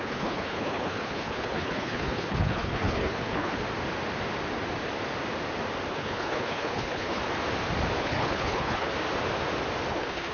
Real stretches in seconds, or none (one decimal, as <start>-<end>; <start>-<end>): 3.6-5.9; 7.2-8.0; 8.9-9.9